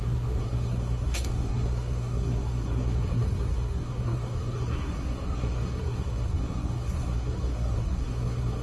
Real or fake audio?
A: fake